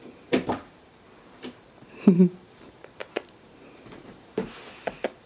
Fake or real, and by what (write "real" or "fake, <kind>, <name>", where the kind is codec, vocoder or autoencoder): fake, vocoder, BigVGAN v2